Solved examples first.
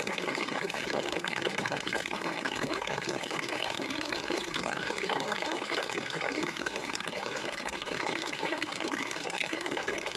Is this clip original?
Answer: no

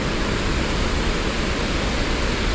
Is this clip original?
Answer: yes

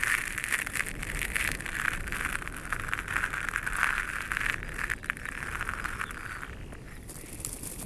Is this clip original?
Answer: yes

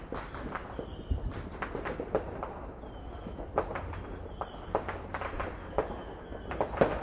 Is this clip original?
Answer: yes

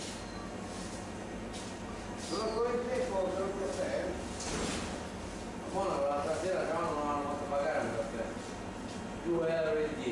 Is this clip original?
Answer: yes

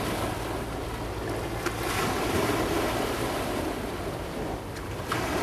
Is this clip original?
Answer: yes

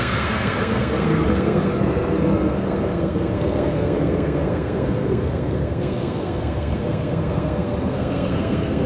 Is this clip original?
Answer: no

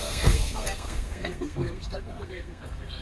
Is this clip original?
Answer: no